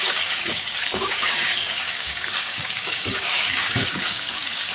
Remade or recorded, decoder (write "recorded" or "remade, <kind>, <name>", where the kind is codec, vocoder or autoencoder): remade, codec, DAC